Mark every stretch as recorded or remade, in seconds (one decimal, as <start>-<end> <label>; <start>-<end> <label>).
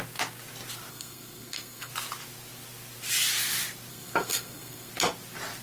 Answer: 0.0-0.9 recorded; 0.9-1.9 remade; 1.9-3.9 recorded; 3.9-4.9 remade; 4.9-5.6 recorded